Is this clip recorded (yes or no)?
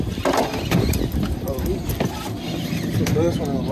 yes